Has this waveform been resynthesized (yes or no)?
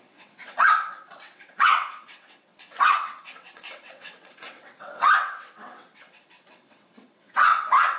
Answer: yes